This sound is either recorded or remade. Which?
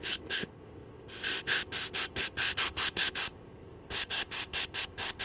remade